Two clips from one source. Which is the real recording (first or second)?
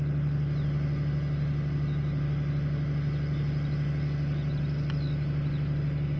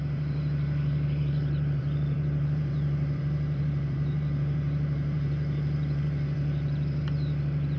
first